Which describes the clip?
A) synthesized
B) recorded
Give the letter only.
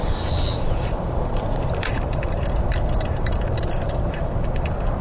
A